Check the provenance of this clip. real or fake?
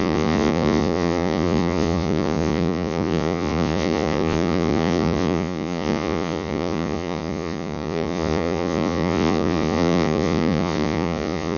fake